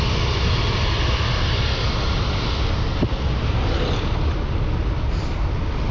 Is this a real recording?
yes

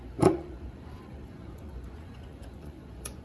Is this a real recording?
no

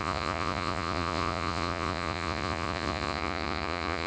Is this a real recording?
no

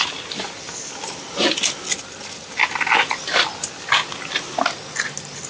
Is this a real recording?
yes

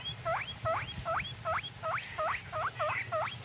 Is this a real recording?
yes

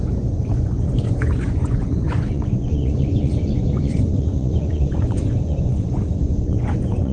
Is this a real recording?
no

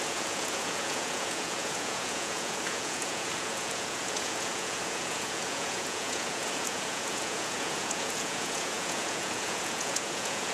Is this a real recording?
no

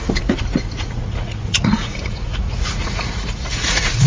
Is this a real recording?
no